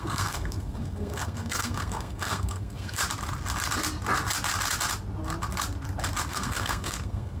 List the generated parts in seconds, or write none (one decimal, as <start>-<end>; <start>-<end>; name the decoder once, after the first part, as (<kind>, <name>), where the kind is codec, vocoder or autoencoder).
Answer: 0.0-3.0 (codec, SNAC); 6.3-7.4